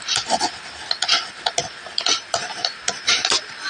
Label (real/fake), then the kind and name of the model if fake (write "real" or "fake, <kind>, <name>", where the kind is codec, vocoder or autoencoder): real